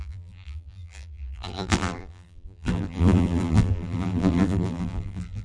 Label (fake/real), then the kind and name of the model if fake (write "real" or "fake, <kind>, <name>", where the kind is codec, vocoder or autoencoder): fake, vocoder, BigVGAN v2